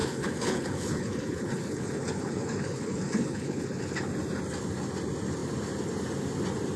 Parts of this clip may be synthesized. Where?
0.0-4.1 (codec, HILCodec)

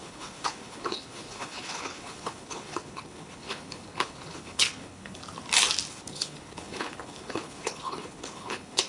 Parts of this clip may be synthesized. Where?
0.0-5.2 (codec, HILCodec); 5.9-8.9

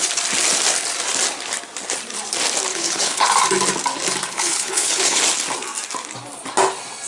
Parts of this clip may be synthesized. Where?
2.7-3.3 (codec, HILCodec); 4.3-5.2

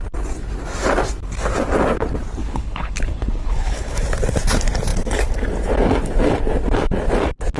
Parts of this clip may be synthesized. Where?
2.4-4.0 (codec, HILCodec)

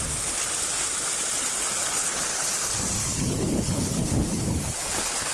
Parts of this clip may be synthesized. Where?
1.8-2.5 (codec, HILCodec); 3.0-5.3